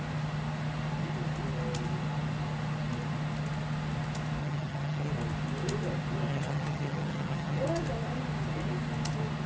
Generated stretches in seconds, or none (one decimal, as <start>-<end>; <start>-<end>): 4.4-5.1; 6.3-7.6